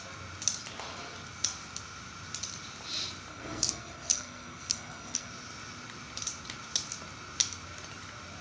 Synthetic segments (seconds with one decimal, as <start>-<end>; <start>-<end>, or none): 3.3-5.3